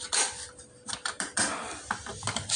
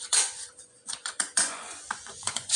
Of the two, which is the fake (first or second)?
second